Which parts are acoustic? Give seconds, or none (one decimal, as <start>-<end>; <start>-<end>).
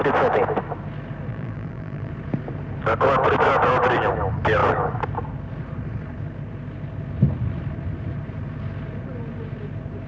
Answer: 0.0-1.3; 2.1-10.1